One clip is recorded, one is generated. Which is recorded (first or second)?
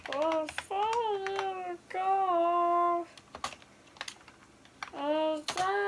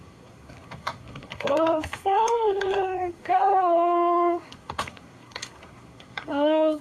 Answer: first